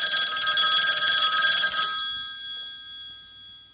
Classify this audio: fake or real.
real